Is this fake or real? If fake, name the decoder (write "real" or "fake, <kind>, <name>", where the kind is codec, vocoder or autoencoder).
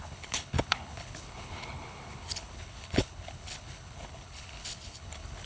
fake, codec, HILCodec